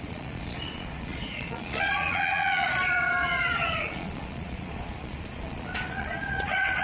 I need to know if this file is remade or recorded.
remade